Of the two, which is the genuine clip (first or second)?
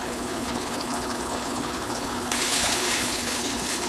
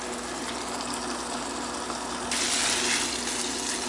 second